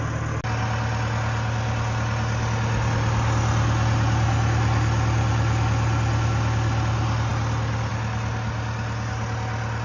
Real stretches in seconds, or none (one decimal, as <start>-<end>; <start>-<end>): 0.0-9.8